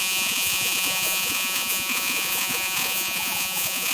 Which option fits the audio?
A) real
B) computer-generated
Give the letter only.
B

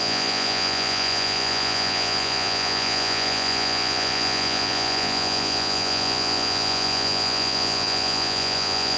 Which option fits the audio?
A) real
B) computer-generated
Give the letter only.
B